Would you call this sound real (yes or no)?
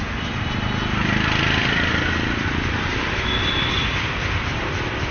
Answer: yes